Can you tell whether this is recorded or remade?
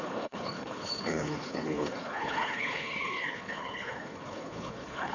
remade